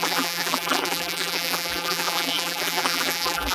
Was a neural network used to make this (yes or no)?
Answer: yes